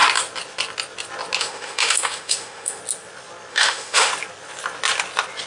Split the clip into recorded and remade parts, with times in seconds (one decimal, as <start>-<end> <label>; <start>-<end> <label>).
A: 0.0-1.4 recorded; 1.4-2.8 remade; 2.8-3.5 recorded; 3.5-4.1 remade; 4.1-5.5 recorded